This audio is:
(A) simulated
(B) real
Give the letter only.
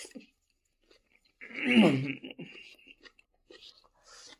B